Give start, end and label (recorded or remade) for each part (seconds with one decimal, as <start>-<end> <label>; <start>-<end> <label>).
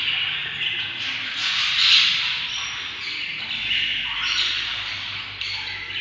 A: 0.0-6.0 recorded